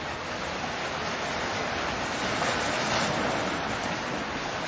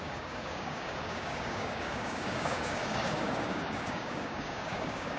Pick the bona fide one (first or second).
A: first